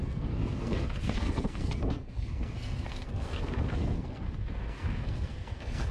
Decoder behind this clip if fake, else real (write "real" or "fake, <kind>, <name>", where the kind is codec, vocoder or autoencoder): fake, codec, SNAC